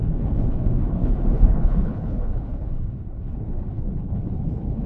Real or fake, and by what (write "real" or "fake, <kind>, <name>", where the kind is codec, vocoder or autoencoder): fake, codec, HILCodec